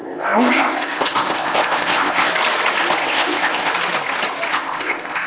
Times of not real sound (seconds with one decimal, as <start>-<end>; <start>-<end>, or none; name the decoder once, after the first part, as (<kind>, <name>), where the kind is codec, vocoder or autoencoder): 0.0-2.3 (codec, ZipCodec); 3.0-3.7; 4.5-5.3

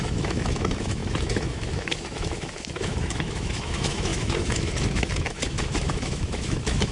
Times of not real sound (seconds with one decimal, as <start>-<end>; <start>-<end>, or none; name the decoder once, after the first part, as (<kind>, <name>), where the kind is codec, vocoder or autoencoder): 0.0-6.9 (autoencoder, DAC-VAE)

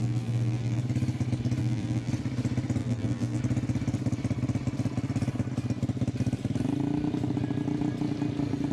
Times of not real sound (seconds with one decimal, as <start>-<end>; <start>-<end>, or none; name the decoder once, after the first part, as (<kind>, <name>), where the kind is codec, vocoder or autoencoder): 0.0-0.8 (vocoder, BigVGAN v2); 1.6-2.1; 2.8-3.4

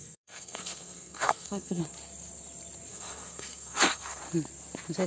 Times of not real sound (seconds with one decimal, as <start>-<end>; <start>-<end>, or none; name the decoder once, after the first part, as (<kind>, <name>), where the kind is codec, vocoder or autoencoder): 0.0-1.8 (codec, SNAC); 2.9-4.2

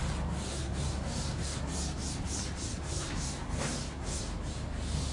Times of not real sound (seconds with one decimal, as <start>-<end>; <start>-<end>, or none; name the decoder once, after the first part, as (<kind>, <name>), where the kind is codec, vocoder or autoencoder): 0.5-1.6 (codec, SNAC); 2.7-4.2